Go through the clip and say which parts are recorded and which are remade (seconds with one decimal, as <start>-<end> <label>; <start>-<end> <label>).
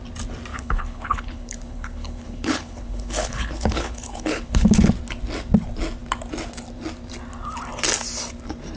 0.0-0.5 recorded; 0.5-4.9 remade; 4.9-8.8 recorded